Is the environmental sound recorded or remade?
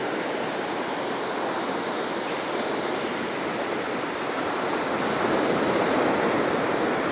recorded